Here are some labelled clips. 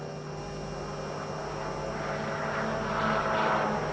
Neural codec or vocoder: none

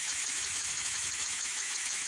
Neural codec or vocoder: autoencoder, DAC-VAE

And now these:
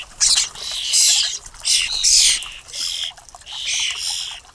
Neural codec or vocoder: none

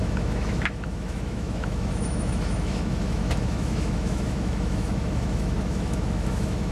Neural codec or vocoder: autoencoder, DAC-VAE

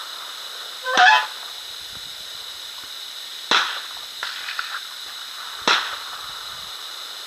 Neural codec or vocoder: none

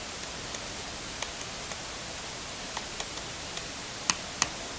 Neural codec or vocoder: none